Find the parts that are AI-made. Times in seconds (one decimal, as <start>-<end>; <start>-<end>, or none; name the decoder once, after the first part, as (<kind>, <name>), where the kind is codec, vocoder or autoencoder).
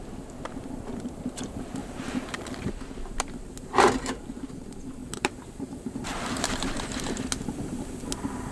1.8-4.5 (vocoder, BigVGAN v2); 5.0-7.0